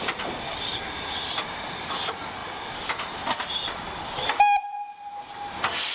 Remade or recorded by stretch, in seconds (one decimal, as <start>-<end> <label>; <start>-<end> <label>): 0.0-5.9 recorded